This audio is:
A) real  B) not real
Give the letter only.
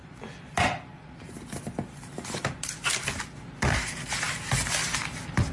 A